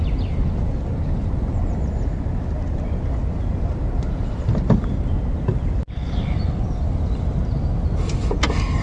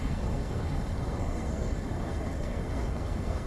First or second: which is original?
first